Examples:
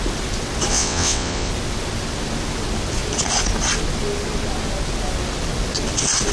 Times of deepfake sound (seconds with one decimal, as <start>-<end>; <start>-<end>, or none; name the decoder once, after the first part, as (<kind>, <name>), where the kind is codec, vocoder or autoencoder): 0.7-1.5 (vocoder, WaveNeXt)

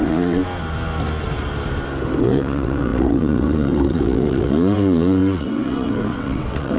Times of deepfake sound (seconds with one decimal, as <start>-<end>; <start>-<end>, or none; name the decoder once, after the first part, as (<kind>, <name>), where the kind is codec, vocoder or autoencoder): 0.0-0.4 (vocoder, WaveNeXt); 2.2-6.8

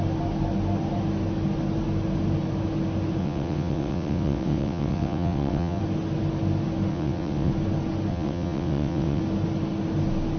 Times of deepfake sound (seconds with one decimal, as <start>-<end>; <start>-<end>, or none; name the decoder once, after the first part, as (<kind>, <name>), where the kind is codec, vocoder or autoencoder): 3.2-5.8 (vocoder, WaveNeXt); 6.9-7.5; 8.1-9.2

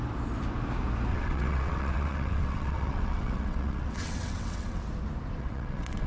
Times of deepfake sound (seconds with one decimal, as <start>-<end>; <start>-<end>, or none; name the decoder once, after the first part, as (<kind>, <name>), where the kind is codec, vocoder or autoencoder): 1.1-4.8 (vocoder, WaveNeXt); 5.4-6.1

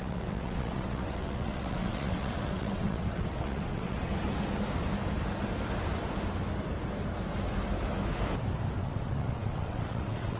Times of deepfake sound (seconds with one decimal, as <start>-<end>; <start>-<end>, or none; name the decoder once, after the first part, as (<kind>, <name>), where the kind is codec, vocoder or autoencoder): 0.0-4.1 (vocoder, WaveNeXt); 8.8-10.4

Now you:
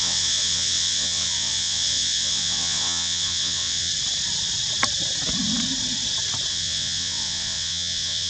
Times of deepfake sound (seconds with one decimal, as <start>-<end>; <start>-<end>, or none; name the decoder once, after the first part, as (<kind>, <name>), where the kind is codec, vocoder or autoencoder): 0.0-3.9 (vocoder, WaveNeXt); 6.5-8.3

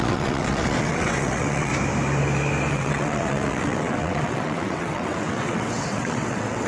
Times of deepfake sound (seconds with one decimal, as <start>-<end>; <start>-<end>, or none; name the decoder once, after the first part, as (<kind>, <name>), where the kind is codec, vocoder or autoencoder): 0.0-1.7 (vocoder, WaveNeXt); 2.7-6.7